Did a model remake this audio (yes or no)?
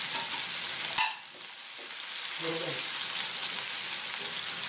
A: no